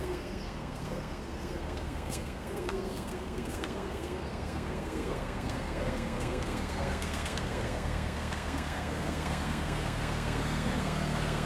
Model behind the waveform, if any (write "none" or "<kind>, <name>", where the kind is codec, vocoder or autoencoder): codec, SNAC